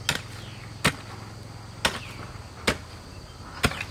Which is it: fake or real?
real